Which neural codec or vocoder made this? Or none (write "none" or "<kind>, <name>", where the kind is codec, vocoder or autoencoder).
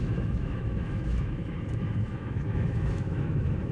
autoencoder, DAC-VAE